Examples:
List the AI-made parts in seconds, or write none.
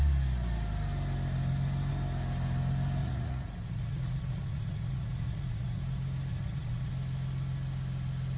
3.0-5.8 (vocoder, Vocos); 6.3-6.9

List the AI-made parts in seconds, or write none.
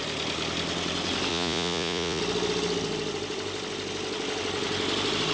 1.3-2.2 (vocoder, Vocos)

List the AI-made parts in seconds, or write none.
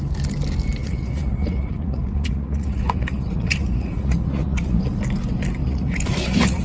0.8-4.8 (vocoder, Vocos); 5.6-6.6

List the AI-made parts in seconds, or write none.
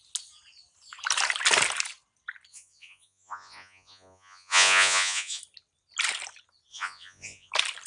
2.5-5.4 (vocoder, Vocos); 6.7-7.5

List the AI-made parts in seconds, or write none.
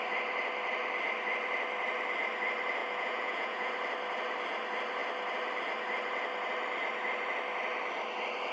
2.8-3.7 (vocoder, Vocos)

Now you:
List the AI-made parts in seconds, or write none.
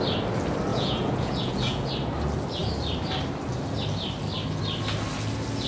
0.7-1.9 (vocoder, Vocos)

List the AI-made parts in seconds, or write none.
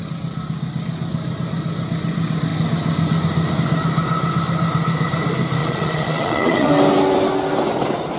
5.6-6.7 (vocoder, Vocos)